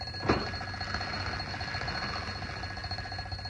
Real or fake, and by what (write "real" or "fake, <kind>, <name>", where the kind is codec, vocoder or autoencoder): real